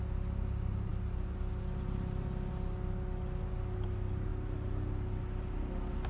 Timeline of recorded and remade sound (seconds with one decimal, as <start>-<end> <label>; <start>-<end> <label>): 0.0-6.1 recorded